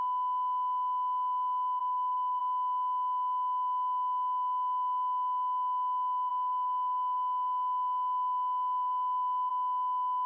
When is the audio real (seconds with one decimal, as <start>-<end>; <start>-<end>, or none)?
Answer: 0.0-1.8; 2.4-6.3; 9.5-10.3